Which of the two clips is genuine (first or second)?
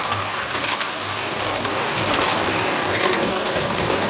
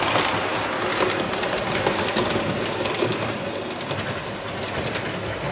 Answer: second